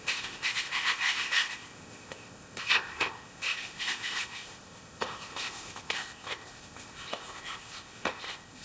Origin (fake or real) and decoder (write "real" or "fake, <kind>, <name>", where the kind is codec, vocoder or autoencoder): fake, codec, ZipCodec